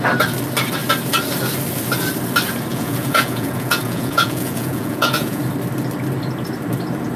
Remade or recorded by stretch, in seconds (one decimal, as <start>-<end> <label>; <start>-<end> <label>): 0.0-2.7 recorded; 2.7-5.4 remade; 5.4-7.2 recorded